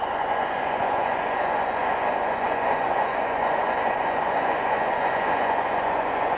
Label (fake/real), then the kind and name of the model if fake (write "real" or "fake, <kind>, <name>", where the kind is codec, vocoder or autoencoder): fake, vocoder, Vocos